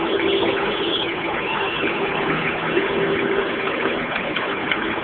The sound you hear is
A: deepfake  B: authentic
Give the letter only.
A